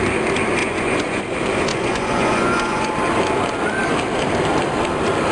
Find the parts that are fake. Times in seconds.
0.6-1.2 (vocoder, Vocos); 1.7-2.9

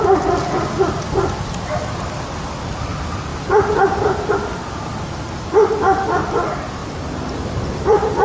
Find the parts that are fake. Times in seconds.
none

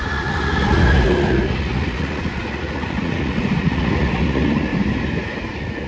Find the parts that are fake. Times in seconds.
0.0-4.7 (vocoder, Vocos); 5.5-5.9

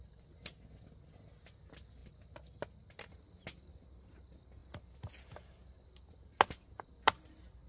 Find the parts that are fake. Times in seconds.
none

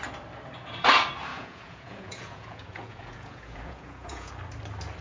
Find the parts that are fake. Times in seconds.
1.3-4.3 (vocoder, Vocos)

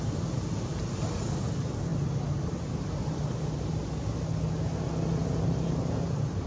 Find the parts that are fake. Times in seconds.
none